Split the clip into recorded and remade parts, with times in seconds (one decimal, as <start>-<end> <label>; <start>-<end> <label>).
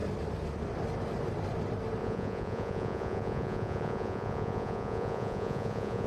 0.0-2.0 recorded; 2.0-6.1 remade